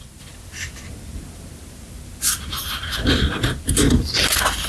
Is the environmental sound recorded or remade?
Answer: recorded